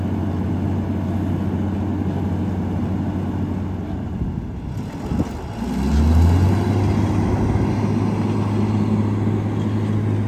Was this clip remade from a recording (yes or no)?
no